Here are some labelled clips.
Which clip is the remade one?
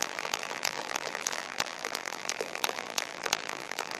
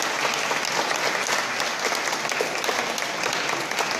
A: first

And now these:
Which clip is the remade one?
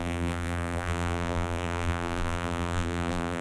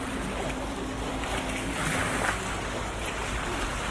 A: first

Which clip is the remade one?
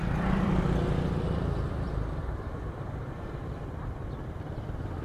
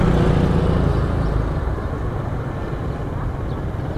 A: first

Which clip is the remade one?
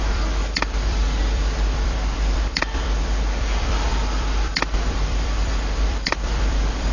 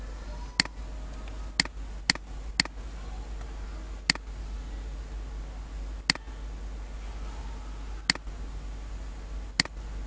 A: first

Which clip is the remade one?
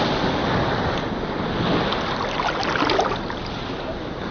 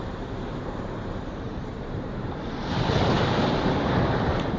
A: second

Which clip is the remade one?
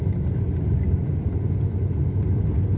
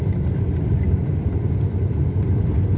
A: second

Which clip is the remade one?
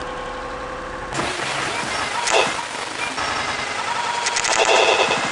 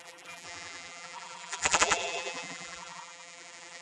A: second